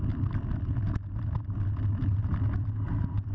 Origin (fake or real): real